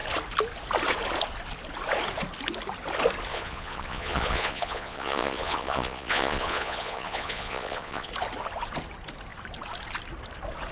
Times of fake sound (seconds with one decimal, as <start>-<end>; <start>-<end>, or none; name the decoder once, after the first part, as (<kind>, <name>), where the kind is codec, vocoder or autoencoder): 3.3-8.1 (vocoder, Vocos)

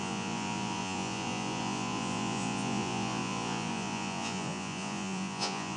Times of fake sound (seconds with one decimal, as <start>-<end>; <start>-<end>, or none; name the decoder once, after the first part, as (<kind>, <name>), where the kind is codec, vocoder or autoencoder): 0.0-5.8 (vocoder, Vocos)

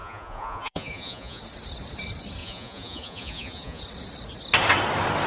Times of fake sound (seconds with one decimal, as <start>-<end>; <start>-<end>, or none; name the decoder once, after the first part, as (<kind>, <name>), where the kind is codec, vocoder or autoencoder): 0.0-1.4 (vocoder, Vocos); 2.4-3.8

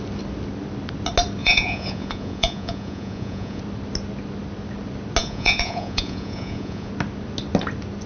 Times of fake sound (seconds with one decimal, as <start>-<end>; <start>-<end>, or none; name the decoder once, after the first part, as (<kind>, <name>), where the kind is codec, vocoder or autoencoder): 1.4-3.6 (vocoder, Vocos); 5.2-6.9

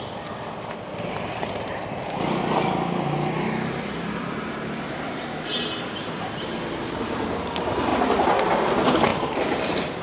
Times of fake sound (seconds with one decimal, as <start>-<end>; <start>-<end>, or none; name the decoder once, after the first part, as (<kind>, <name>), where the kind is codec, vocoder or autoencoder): none

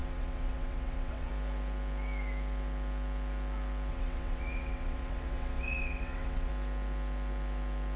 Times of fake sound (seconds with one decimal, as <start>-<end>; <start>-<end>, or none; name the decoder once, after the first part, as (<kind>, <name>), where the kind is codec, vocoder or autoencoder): 0.0-1.3 (vocoder, WaveNeXt); 3.9-6.5

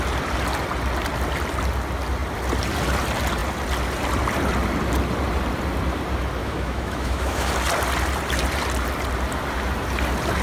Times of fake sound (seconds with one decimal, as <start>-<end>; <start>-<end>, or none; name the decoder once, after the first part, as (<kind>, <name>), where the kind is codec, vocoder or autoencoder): 6.4-7.5 (autoencoder, DAC-VAE)

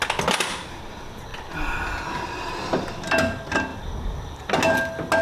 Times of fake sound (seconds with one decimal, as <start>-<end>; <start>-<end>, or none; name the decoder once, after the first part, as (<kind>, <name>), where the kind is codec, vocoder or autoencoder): none